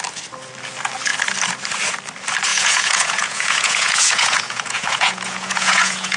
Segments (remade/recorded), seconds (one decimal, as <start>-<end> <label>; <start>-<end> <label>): 0.0-2.5 recorded; 2.5-6.2 remade